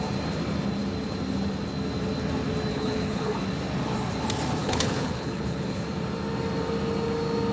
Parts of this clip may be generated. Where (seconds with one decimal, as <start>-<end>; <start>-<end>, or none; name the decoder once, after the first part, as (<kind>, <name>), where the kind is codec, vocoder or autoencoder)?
2.7-3.4 (codec, HILCodec); 4.6-5.8